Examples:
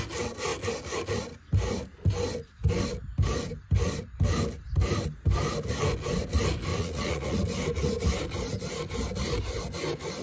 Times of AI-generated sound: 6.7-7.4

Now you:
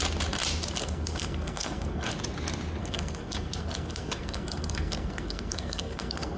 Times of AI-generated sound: 0.8-2.1; 2.8-6.4

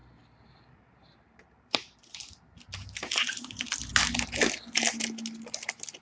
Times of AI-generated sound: 0.0-2.0; 2.8-3.9

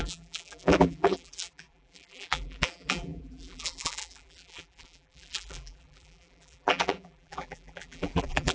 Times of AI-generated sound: 0.0-8.5